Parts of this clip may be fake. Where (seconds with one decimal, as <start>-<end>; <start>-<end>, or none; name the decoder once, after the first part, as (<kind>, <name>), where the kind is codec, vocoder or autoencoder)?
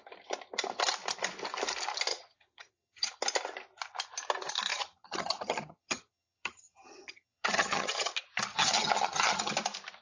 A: 2.1-3.1 (vocoder, HiFi-GAN); 4.7-8.1; 8.5-9.5